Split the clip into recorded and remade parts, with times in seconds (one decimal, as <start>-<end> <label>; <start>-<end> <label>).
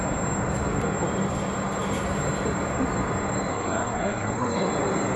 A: 0.0-3.5 recorded; 3.5-4.7 remade; 4.7-5.2 recorded